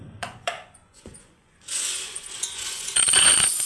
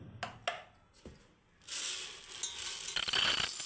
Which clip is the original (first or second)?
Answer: second